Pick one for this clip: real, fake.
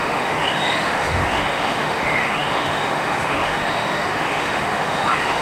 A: fake